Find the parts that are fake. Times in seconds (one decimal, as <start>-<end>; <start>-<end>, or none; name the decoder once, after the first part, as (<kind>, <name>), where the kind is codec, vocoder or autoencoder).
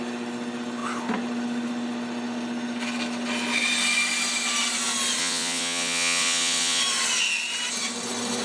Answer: 5.2-6.8 (vocoder, WaveNeXt)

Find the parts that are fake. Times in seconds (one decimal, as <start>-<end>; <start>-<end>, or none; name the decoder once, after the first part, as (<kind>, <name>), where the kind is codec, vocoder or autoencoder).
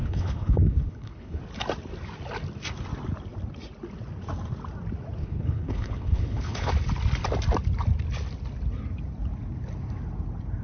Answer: 0.0-1.4 (codec, HILCodec); 5.2-6.7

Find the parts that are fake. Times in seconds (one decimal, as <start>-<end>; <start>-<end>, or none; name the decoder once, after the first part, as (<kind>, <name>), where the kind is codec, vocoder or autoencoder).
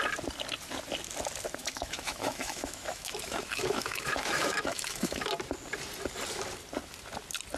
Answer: 1.6-5.3 (autoencoder, DAC-VAE)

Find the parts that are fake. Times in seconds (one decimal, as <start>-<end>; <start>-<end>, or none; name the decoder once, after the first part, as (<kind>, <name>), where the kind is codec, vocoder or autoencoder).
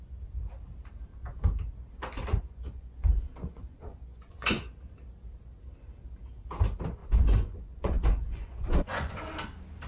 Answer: 2.3-4.6 (vocoder, Vocos); 7.0-9.3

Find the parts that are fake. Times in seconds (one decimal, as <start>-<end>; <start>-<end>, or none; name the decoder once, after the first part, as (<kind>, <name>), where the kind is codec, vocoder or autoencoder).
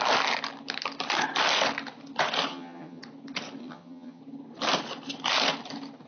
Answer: 2.5-3.0 (vocoder, HiFi-GAN); 3.6-4.2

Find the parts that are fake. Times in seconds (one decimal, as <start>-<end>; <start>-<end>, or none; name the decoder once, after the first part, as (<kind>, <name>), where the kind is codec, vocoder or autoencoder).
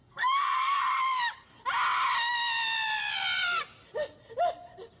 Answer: 0.0-0.8 (codec, SNAC)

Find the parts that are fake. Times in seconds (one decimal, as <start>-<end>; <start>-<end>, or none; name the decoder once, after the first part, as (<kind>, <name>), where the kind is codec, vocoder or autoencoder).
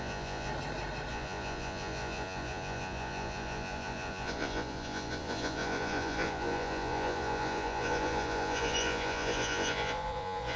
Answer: 0.0-0.5 (vocoder, Vocos); 1.1-10.6